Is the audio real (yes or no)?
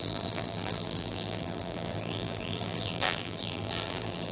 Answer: no